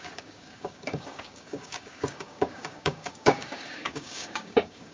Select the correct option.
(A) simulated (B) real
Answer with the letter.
A